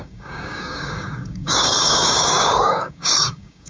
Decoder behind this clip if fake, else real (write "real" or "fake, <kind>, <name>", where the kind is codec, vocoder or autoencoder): fake, codec, DAC